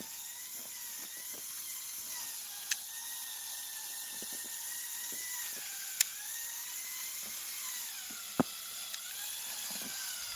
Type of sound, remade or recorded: recorded